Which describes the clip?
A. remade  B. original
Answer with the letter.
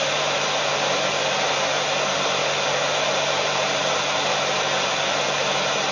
B